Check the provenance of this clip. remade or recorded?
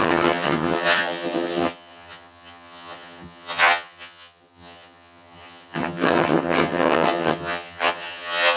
remade